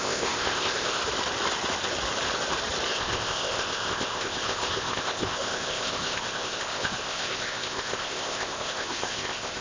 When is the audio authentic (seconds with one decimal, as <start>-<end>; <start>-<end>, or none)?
1.0-2.9